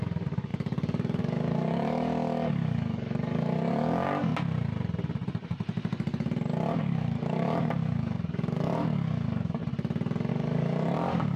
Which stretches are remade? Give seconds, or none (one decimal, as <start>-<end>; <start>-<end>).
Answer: 0.0-4.3; 6.8-9.6; 10.3-11.4